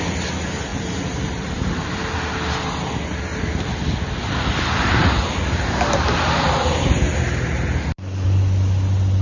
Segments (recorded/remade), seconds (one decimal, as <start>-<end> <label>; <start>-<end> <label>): 0.0-0.7 recorded; 0.7-1.7 remade; 1.7-3.3 recorded; 3.3-3.9 remade; 3.9-9.2 recorded